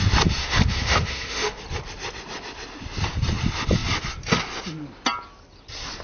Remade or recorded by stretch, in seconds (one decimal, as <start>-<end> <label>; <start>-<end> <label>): 0.0-0.4 recorded; 0.4-1.6 remade; 1.6-6.0 recorded